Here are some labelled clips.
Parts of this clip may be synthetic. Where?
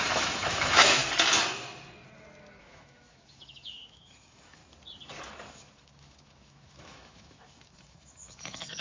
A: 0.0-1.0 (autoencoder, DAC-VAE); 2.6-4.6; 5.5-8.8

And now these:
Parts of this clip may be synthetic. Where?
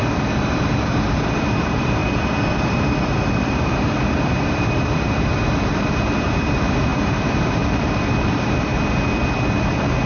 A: 0.0-2.0 (vocoder, BigVGAN v2); 2.5-8.7; 9.6-10.1